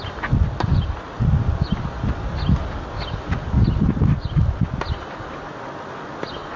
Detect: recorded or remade recorded